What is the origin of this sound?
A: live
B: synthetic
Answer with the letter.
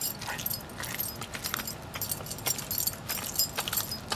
A